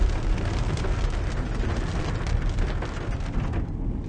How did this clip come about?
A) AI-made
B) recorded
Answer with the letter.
B